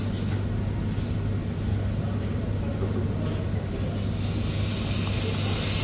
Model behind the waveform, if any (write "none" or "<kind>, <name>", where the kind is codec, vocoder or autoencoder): none